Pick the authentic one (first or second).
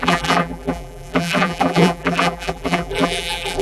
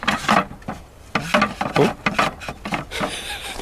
second